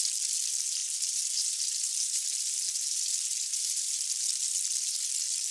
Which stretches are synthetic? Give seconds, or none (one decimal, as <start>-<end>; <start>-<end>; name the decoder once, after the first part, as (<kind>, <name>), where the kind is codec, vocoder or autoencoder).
0.8-4.1 (vocoder, BigVGAN v2)